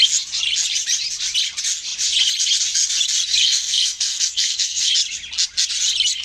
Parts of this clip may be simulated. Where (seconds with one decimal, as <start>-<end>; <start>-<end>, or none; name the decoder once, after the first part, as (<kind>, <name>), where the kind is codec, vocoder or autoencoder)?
3.4-4.9 (codec, SNAC)